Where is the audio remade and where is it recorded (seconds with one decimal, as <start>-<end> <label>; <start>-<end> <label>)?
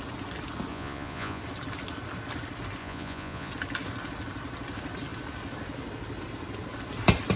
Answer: 0.0-0.7 recorded; 0.7-1.4 remade; 1.4-2.8 recorded; 2.8-3.5 remade; 3.5-7.4 recorded